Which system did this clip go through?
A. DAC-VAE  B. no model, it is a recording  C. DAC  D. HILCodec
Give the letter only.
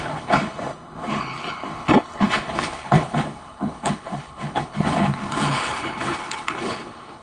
D